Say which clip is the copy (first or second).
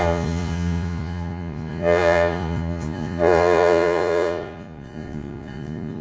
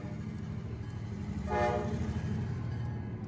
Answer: first